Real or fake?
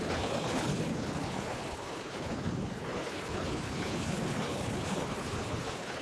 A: fake